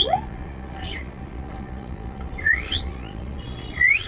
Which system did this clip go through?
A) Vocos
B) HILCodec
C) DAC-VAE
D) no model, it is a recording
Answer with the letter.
A